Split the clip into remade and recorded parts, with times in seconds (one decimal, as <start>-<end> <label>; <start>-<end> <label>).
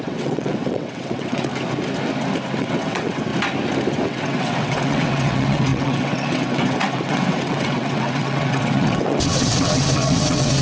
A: 0.0-1.5 remade; 1.5-2.6 recorded; 2.6-3.3 remade; 3.3-3.9 recorded; 3.9-10.6 remade